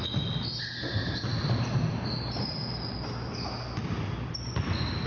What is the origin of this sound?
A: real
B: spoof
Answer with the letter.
A